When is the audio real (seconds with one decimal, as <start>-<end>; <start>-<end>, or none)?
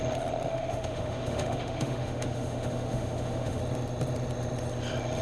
0.0-0.5; 3.6-5.2